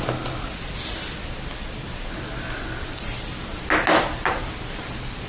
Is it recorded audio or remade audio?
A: recorded